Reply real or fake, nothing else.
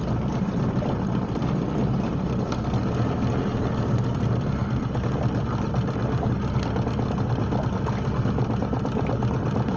real